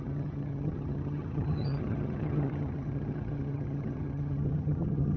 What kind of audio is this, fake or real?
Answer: fake